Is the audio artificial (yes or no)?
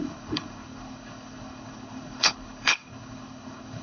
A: yes